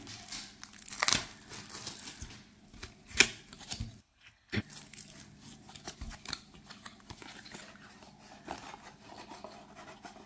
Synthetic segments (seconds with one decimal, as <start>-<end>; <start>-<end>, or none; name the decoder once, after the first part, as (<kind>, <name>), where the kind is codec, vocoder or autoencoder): 4.0-4.6 (codec, HILCodec)